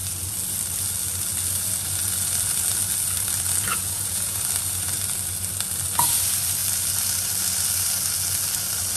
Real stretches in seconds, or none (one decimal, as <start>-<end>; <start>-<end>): 0.0-3.7; 4.4-9.0